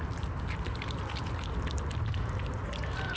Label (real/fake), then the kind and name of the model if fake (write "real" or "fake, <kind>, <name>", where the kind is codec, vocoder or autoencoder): real